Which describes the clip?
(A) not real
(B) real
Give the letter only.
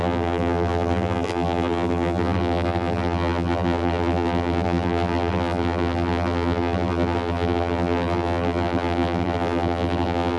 A